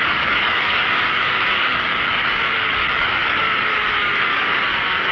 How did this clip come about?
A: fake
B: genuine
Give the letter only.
A